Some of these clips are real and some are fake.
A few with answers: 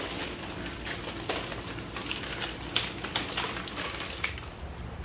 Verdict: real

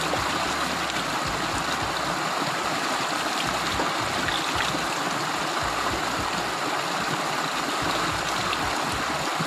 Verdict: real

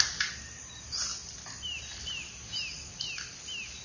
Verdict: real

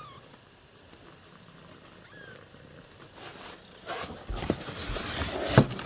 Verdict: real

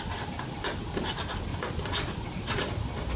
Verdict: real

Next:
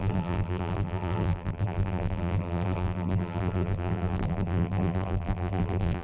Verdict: fake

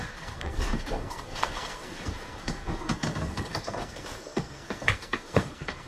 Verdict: fake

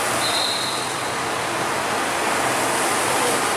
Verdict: real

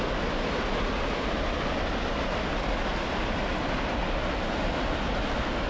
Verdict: real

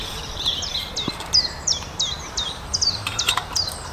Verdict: fake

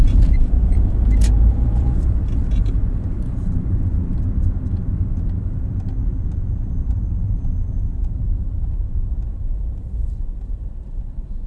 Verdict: fake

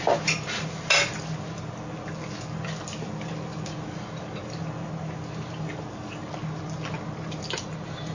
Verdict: real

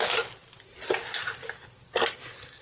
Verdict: real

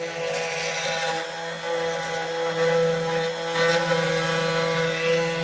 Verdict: real